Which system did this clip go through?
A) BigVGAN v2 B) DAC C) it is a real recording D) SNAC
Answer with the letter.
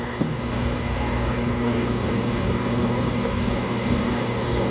B